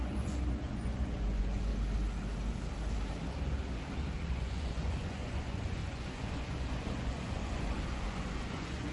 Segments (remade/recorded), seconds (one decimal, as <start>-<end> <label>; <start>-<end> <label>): 0.0-1.7 remade; 1.7-4.3 recorded; 4.3-8.9 remade